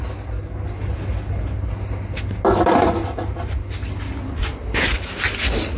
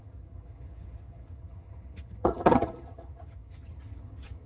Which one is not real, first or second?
second